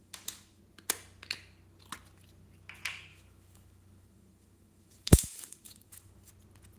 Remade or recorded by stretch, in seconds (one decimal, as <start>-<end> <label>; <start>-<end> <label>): 0.0-0.6 remade; 0.6-3.1 recorded; 3.1-6.3 remade; 6.3-6.8 recorded